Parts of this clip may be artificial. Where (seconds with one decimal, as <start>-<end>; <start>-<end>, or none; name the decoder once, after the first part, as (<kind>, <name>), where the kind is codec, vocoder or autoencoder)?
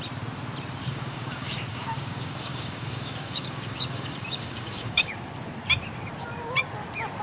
0.8-5.1 (codec, DAC)